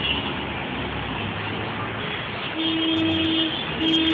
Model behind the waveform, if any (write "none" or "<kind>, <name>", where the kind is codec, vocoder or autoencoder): none